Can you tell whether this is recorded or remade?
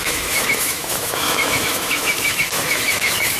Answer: remade